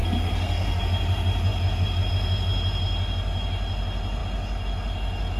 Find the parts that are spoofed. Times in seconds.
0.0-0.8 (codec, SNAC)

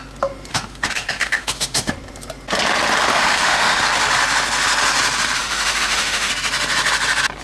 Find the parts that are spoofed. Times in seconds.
0.5-1.9 (autoencoder, DAC-VAE); 3.1-3.8; 5.4-6.3

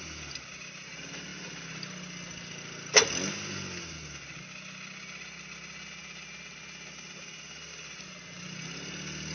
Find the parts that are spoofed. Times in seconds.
none

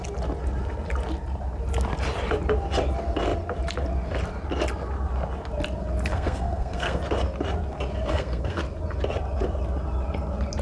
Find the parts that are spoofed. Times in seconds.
6.1-7.0 (codec, SNAC); 8.1-8.6

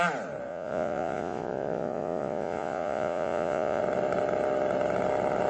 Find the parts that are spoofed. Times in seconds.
0.5-3.8 (vocoder, Vocos)

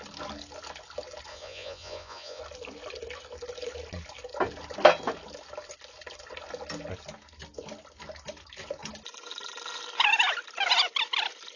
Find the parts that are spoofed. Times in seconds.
1.3-2.4 (vocoder, Vocos)

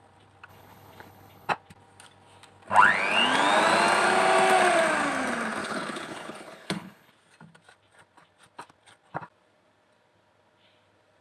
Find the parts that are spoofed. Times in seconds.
0.5-1.5 (codec, HILCodec); 5.6-7.1